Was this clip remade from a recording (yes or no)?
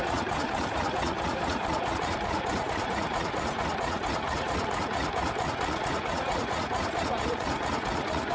yes